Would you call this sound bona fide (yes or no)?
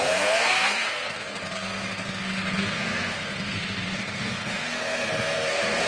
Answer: no